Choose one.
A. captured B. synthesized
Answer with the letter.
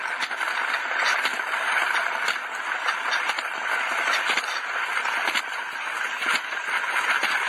A